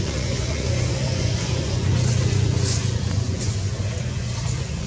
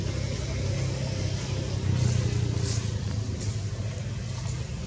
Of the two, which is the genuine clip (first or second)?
second